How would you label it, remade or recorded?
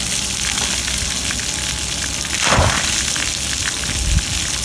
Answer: recorded